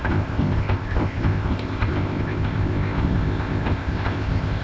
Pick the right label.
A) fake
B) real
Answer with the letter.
A